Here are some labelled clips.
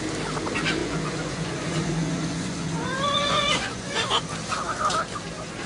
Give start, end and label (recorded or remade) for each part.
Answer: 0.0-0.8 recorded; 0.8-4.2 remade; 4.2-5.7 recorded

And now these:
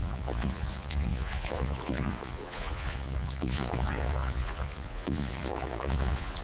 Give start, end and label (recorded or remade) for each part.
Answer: 0.0-6.4 remade